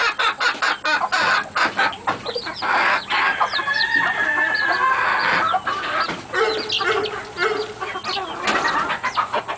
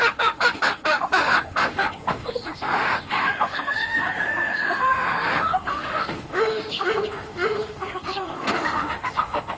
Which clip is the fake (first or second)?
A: second